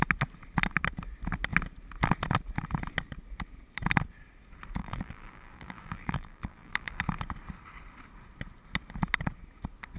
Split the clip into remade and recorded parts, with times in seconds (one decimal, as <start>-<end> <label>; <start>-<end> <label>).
0.0-4.8 recorded; 4.8-7.0 remade; 7.0-10.0 recorded